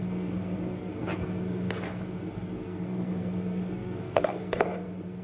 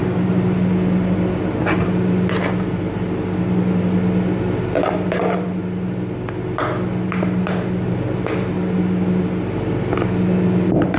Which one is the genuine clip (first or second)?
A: second